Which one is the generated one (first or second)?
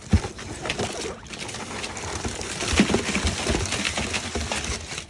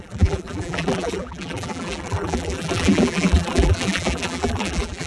second